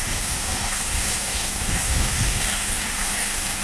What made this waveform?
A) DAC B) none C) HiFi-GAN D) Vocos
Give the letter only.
A